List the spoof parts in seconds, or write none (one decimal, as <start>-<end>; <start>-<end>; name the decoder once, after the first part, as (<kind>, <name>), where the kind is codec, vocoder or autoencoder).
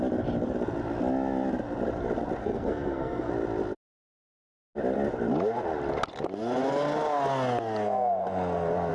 2.4-3.3 (codec, SNAC)